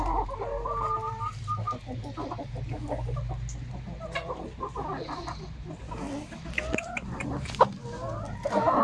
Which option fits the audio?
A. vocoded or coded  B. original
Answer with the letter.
B